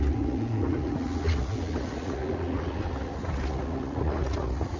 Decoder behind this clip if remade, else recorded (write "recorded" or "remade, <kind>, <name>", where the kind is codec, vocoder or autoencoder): remade, vocoder, Vocos